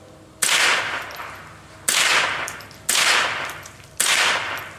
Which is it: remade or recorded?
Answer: recorded